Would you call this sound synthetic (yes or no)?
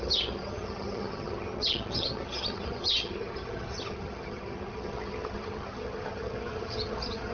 yes